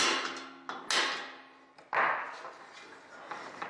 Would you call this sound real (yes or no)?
yes